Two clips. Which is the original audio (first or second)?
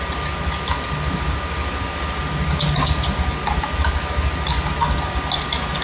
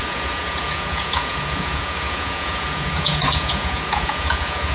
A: first